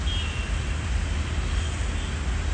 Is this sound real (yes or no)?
yes